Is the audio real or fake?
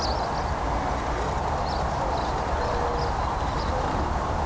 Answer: real